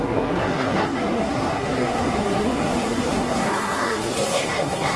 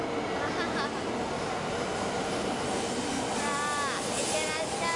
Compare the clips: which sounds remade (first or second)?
first